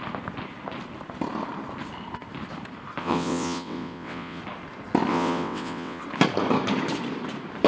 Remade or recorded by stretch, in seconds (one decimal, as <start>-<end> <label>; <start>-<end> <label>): 0.0-3.0 recorded; 3.0-4.4 remade; 4.4-5.1 recorded; 5.1-6.0 remade; 6.0-7.7 recorded